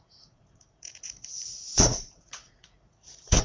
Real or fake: fake